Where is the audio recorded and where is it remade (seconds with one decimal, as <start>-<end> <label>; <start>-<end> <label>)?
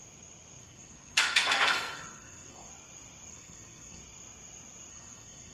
0.0-0.6 recorded; 0.6-2.7 remade; 2.7-3.3 recorded; 3.3-4.0 remade; 4.0-4.9 recorded; 4.9-5.5 remade